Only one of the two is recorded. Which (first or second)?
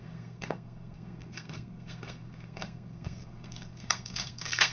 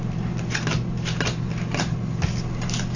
second